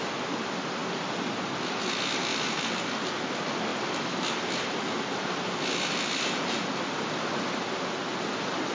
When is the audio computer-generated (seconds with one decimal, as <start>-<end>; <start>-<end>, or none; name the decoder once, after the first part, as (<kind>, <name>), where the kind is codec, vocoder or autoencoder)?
none